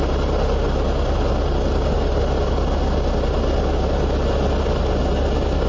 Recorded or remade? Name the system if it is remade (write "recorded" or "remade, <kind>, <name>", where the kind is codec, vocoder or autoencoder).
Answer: recorded